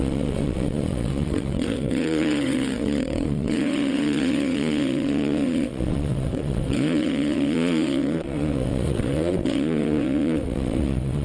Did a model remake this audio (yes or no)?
yes